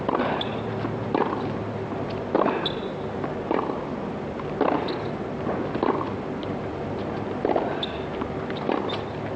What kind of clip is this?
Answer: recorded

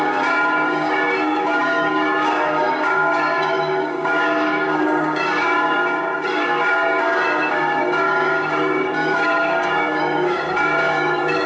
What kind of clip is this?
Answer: remade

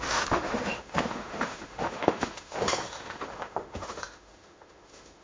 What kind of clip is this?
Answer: remade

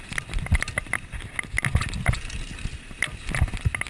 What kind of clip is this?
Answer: recorded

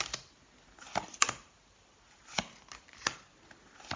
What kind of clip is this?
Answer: recorded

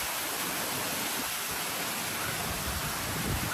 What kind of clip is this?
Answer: recorded